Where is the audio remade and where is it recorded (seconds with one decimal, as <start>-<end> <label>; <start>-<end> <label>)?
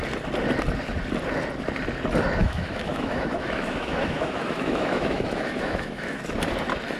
0.0-2.4 recorded; 2.4-6.2 remade; 6.2-7.0 recorded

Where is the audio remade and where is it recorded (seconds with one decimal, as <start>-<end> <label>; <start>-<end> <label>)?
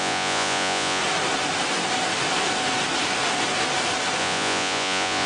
0.0-1.0 remade; 1.0-4.2 recorded; 4.2-5.3 remade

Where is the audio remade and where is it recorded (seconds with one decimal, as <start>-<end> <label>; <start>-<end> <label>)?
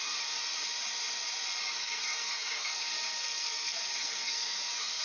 0.0-0.4 remade; 0.4-1.8 recorded; 1.8-5.0 remade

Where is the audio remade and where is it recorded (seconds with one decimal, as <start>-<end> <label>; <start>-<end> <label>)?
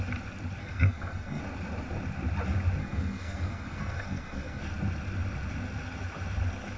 0.0-0.6 recorded; 0.6-1.4 remade; 1.4-2.8 recorded; 2.8-4.6 remade; 4.6-6.8 recorded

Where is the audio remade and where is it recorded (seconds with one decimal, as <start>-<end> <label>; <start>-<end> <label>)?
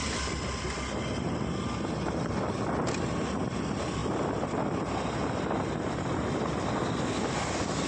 0.0-7.9 recorded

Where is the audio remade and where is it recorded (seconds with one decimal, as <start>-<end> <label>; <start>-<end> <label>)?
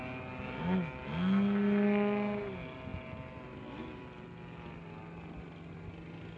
0.0-6.4 recorded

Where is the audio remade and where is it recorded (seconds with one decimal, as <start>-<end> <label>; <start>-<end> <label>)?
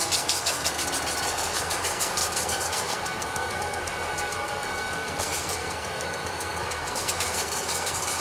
0.0-0.8 remade; 0.8-1.3 recorded; 1.3-8.2 remade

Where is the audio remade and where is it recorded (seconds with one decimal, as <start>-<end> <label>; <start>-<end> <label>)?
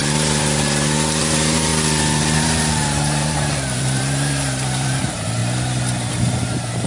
0.0-1.2 recorded; 1.2-1.7 remade; 1.7-2.4 recorded; 2.4-5.4 remade; 5.4-6.1 recorded; 6.1-6.9 remade